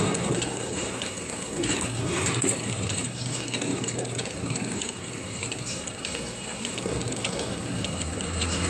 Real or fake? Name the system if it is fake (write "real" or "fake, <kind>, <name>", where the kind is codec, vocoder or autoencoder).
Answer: fake, codec, SNAC